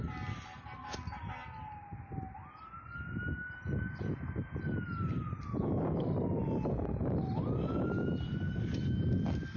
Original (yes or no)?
yes